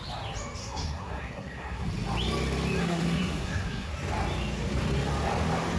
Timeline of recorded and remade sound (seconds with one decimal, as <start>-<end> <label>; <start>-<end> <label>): 0.0-0.6 recorded; 0.6-1.9 remade; 1.9-2.8 recorded; 2.8-3.9 remade; 3.9-5.8 recorded